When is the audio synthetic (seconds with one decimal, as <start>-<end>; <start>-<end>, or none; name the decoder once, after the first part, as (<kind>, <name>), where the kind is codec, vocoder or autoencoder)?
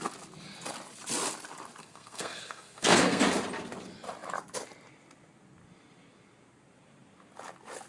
1.8-3.2 (codec, SNAC)